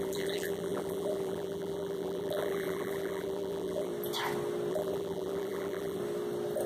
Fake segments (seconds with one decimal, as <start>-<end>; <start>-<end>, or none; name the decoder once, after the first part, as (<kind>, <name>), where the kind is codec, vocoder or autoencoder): 0.0-3.9 (vocoder, BigVGAN v2); 4.7-6.0